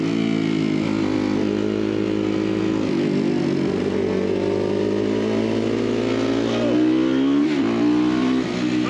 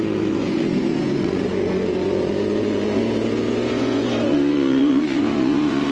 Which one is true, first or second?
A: first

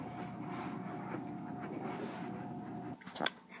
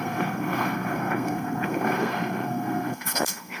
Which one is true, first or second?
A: first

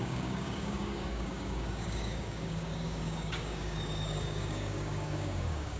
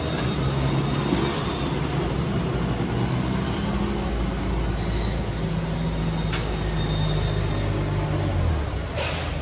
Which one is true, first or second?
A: second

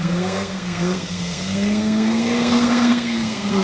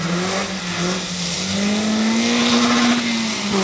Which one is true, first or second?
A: second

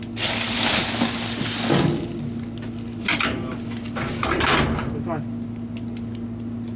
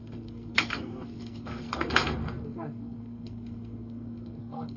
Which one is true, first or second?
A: first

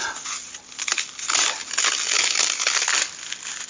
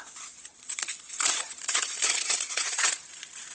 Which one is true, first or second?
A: first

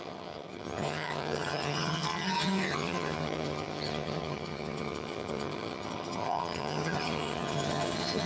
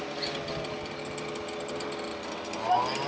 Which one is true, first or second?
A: second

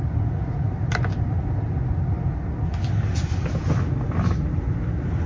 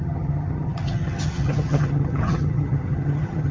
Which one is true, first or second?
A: first